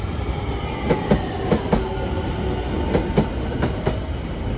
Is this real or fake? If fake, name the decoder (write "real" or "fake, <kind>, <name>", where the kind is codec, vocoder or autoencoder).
real